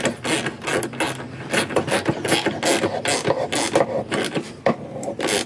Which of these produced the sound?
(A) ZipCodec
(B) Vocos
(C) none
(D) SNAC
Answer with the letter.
C